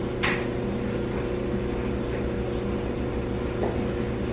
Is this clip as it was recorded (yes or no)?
yes